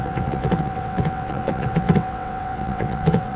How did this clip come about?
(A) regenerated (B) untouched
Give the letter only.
A